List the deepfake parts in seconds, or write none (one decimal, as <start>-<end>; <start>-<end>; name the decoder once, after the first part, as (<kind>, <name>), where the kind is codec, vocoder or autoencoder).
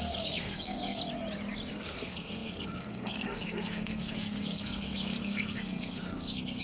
0.0-1.0 (codec, SNAC); 1.7-6.6